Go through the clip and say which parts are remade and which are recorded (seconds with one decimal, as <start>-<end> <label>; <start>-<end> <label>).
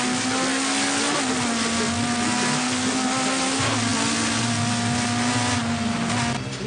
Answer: 0.0-6.7 recorded